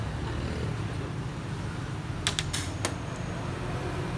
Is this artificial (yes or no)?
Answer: no